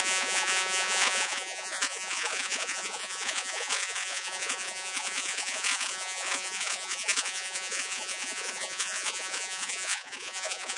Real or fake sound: fake